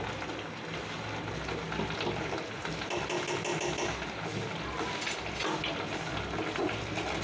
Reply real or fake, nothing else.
real